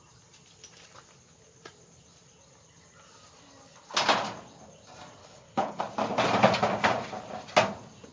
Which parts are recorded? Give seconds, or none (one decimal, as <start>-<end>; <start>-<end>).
0.0-5.2; 5.8-8.1